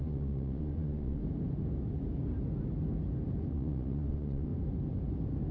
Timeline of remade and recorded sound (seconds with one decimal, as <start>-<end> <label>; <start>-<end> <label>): 0.0-1.2 remade; 1.2-3.5 recorded; 3.5-4.5 remade; 4.5-5.5 recorded